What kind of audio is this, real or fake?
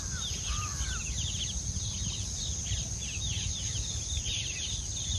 real